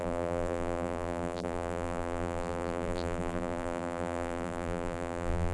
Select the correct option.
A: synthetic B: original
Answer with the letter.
A